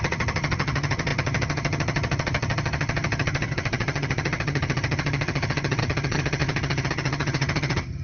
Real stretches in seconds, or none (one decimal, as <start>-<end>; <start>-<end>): none